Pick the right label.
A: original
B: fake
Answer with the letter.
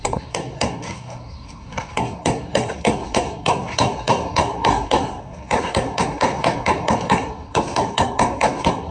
B